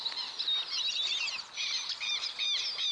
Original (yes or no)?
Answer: yes